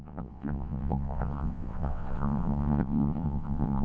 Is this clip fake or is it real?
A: fake